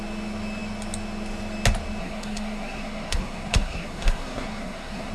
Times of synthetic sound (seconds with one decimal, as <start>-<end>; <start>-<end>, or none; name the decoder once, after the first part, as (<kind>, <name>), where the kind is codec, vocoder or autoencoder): 2.0-5.1 (codec, SNAC)